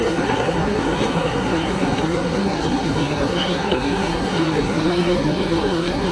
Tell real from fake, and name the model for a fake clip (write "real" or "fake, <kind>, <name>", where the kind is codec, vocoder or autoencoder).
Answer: fake, codec, SNAC